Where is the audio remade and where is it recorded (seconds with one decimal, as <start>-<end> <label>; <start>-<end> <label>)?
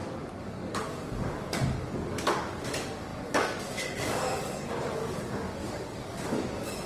0.0-6.9 remade